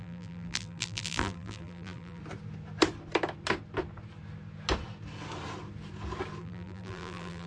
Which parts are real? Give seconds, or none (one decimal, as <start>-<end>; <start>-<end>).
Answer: 2.2-6.4

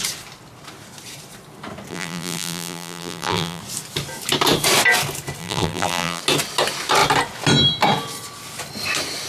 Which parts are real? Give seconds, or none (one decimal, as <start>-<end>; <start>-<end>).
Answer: 0.0-1.9; 3.6-5.4; 6.2-9.3